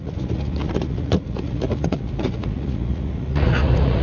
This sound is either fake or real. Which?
fake